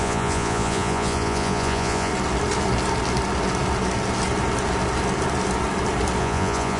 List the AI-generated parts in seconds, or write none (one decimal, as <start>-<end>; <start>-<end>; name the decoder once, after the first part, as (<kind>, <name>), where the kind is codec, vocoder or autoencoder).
0.0-2.1 (vocoder, Vocos); 6.2-6.8